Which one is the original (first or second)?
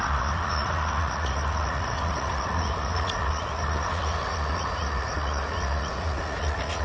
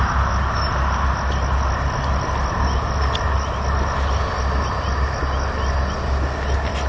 second